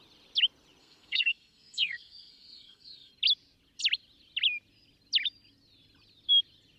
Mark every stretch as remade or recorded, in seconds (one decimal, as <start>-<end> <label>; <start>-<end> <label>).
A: 0.0-0.8 recorded; 0.8-3.1 remade; 3.1-6.8 recorded